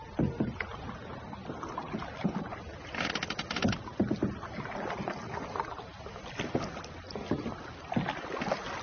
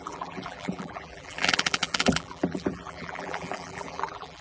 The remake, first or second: second